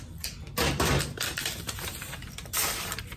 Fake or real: fake